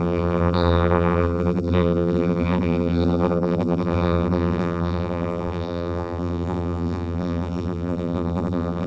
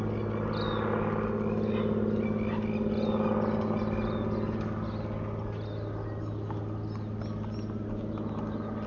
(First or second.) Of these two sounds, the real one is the second